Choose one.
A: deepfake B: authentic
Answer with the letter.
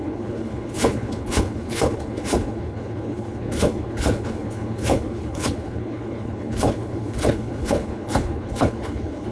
A